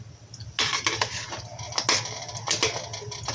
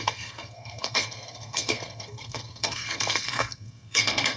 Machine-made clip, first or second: second